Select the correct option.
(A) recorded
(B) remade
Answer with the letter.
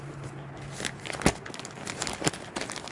A